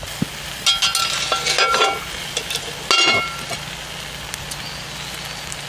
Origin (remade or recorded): recorded